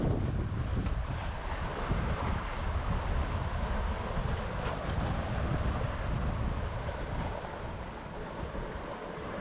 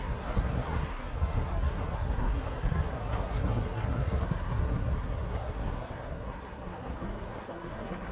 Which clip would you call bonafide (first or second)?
first